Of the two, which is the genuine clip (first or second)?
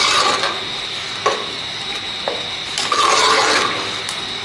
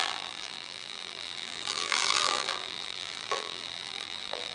first